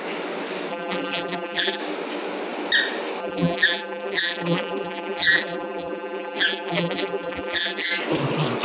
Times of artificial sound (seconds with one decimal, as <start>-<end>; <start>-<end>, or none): 0.7-1.8; 3.2-8.0